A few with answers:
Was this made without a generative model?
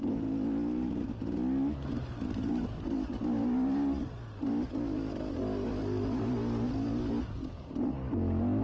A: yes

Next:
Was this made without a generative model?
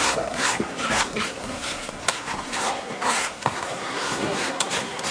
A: no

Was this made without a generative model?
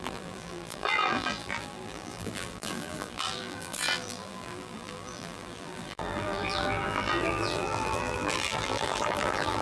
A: no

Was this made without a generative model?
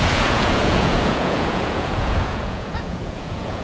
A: no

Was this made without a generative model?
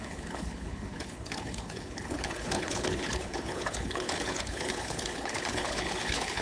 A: no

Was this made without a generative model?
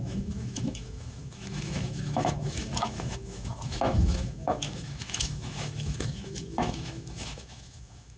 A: no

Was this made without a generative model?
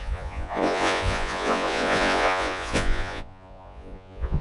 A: no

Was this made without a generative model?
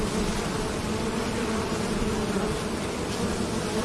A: no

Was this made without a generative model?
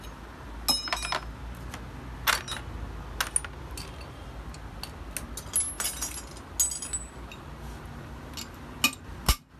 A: yes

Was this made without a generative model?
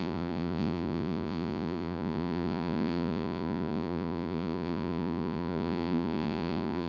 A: no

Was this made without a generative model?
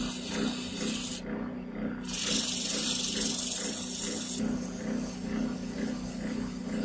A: yes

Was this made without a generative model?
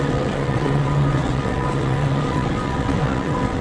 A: no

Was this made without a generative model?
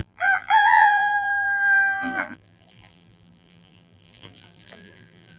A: no